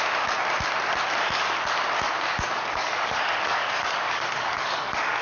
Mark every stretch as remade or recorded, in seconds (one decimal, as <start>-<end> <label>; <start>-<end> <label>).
0.0-2.3 recorded; 2.3-5.2 remade

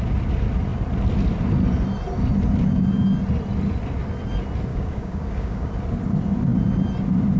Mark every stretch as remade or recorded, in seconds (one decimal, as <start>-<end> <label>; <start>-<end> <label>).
0.0-4.7 recorded; 4.7-5.7 remade; 5.7-7.4 recorded

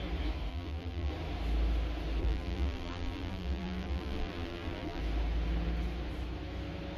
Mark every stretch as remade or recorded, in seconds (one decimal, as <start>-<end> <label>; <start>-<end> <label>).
0.0-0.5 recorded; 0.5-1.1 remade; 1.1-2.2 recorded; 2.2-5.0 remade; 5.0-7.0 recorded

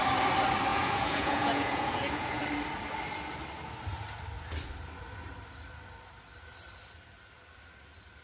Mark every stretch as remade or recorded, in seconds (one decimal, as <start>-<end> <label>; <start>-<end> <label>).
0.0-0.7 recorded; 0.7-2.4 remade; 2.4-8.2 recorded

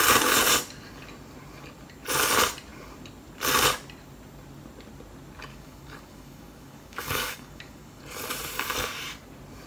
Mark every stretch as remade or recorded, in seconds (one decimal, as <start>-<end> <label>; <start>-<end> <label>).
0.0-5.5 recorded; 5.5-8.0 remade; 8.0-9.7 recorded

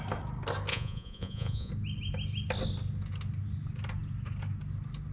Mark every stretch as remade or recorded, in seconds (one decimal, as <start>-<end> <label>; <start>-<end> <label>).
0.0-0.7 recorded; 0.7-1.7 remade; 1.7-5.1 recorded

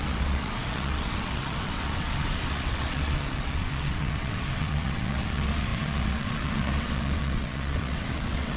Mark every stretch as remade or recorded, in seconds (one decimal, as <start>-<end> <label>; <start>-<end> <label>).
0.0-8.6 remade